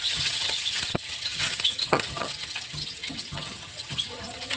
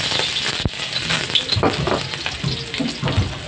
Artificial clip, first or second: first